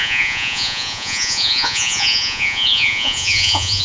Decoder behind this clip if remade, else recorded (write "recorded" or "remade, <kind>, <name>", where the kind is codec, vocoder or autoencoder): remade, vocoder, Vocos